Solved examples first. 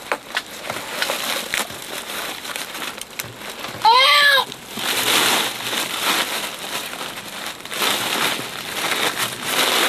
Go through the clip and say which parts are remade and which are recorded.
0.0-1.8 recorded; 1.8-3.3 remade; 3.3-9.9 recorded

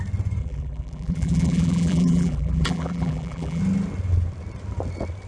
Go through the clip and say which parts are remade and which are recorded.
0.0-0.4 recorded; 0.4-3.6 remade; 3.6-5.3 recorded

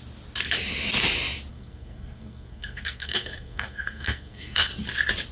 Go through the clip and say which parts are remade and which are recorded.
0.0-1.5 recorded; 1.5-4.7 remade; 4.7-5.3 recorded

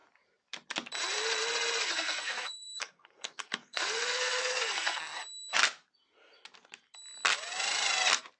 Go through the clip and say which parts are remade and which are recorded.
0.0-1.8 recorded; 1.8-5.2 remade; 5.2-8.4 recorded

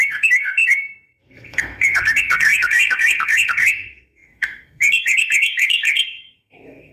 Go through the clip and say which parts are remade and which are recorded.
0.0-6.9 remade

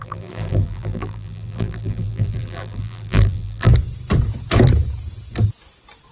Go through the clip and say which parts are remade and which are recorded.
0.0-3.7 remade; 3.7-6.1 recorded

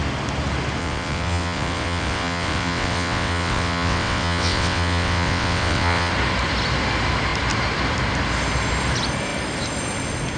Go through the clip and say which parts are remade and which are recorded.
0.0-0.8 recorded; 0.8-6.1 remade; 6.1-10.4 recorded